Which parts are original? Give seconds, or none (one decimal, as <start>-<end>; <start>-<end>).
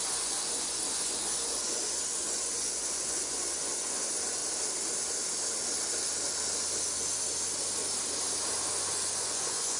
4.4-8.7